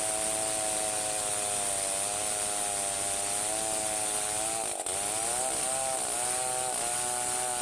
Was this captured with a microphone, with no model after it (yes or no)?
yes